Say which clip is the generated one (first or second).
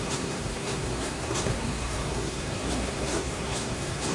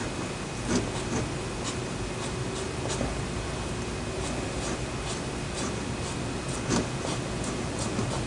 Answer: first